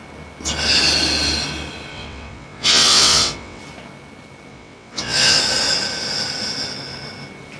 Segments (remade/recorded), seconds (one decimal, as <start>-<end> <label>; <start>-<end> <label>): 0.0-1.9 recorded; 1.9-3.6 remade; 3.6-4.5 recorded; 4.5-5.4 remade; 5.4-7.6 recorded